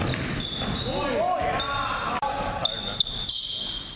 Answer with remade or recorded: recorded